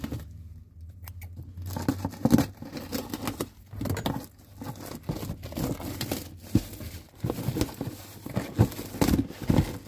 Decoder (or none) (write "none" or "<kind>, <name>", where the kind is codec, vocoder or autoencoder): none